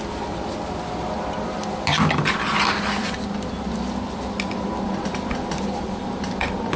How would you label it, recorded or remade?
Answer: remade